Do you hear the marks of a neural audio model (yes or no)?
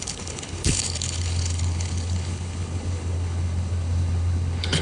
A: yes